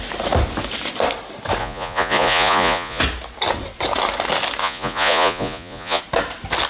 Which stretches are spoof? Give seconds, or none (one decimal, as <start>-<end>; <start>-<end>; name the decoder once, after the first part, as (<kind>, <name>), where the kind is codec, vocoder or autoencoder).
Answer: 1.6-3.0 (vocoder, Vocos); 4.6-6.0